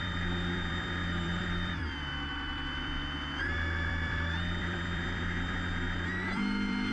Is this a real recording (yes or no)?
no